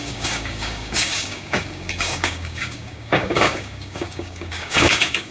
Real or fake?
fake